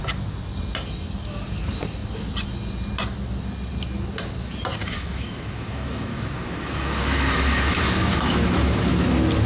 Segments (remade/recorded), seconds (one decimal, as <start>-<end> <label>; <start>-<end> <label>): 0.0-4.8 recorded; 4.8-8.9 remade; 8.9-9.5 recorded